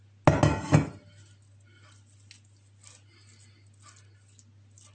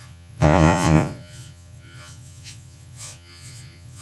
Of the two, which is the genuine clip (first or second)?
first